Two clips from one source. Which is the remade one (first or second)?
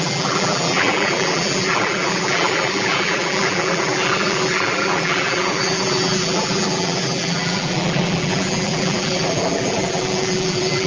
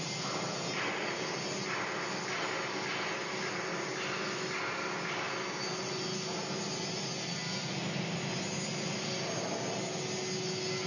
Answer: first